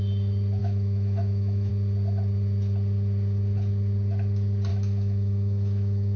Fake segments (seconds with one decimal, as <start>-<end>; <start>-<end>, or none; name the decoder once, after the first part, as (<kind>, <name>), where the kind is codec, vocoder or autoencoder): 0.6-1.7 (autoencoder, DAC-VAE); 4.7-6.2